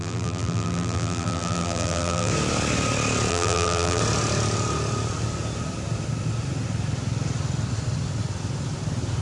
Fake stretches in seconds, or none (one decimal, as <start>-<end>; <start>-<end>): 0.0-2.3; 3.3-4.0